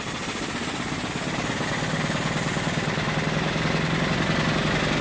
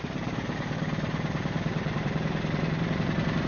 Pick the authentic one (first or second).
first